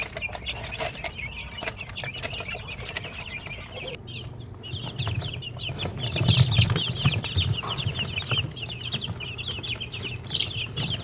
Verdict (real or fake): real